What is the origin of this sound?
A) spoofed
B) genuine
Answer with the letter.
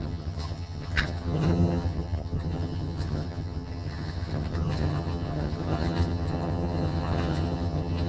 A